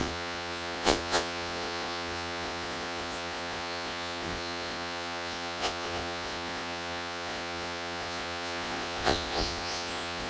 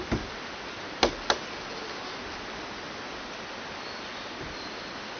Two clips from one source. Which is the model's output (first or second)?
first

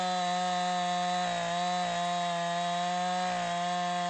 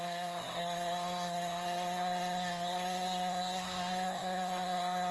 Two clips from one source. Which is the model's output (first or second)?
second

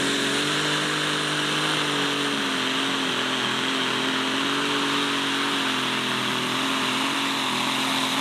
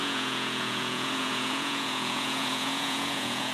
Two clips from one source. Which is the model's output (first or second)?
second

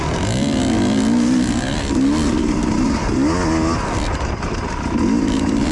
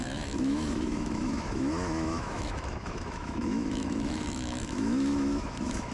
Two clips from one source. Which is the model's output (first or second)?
second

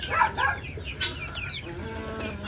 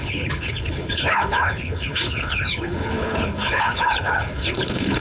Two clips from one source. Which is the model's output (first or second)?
second